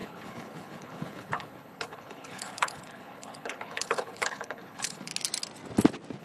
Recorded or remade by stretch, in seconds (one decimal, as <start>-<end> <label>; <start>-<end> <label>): 0.0-5.1 remade; 5.1-6.2 recorded